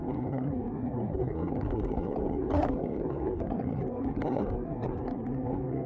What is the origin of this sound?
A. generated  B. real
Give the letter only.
A